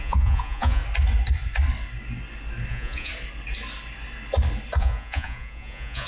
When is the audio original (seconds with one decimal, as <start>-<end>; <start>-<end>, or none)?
0.8-2.7; 3.1-4.8